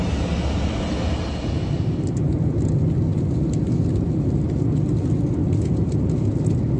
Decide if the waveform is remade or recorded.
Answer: recorded